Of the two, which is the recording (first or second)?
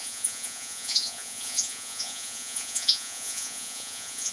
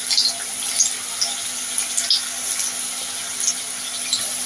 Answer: second